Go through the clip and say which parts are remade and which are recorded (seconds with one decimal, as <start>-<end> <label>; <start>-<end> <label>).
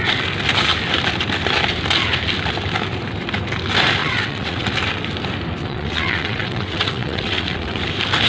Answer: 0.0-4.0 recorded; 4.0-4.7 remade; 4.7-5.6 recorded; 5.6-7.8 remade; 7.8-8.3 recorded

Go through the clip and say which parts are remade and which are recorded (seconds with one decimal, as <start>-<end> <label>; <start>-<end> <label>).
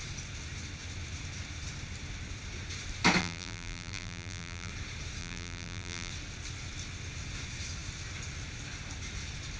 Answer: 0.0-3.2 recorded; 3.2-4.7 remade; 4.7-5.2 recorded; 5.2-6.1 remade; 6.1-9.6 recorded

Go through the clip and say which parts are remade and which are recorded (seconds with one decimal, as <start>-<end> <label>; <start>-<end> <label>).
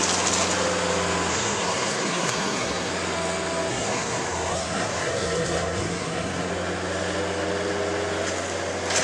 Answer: 0.0-1.3 recorded; 1.3-2.9 remade; 2.9-3.7 recorded; 3.7-6.5 remade; 6.5-9.0 recorded